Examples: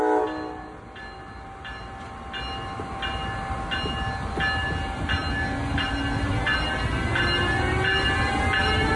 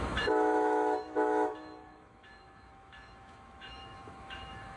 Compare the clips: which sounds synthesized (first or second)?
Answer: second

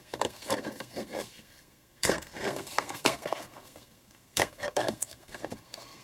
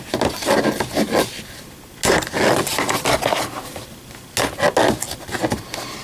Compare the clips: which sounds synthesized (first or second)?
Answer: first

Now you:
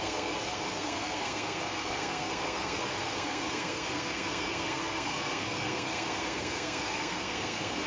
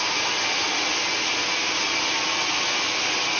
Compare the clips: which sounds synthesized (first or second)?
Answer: first